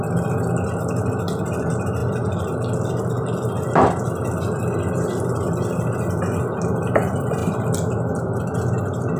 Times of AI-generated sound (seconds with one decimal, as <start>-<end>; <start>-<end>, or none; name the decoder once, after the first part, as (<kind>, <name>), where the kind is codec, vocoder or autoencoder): 7.4-8.4 (vocoder, BigVGAN v2)